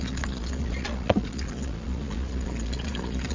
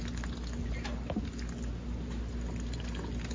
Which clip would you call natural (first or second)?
second